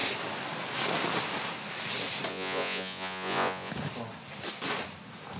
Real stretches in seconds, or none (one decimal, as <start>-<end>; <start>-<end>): 0.0-2.3; 3.7-5.4